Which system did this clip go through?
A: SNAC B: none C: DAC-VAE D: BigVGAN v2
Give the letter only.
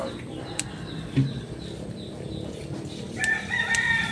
B